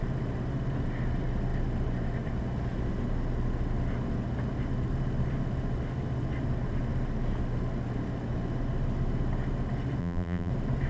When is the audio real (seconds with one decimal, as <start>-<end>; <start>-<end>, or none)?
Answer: 0.0-10.0; 10.5-10.9